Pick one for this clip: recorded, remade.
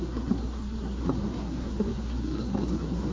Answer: remade